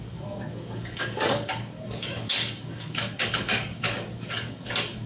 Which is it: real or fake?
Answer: fake